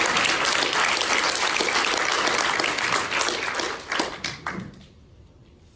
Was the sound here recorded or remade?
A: recorded